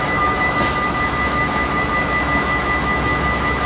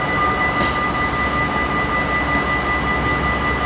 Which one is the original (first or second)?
second